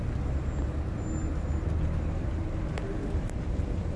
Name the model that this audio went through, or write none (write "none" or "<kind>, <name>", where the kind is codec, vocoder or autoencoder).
none